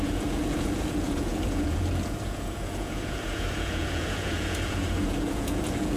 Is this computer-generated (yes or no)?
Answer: yes